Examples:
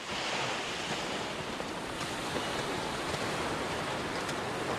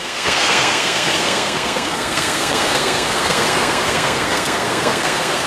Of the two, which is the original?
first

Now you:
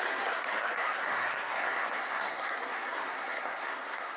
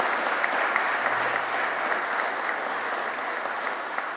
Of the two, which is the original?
second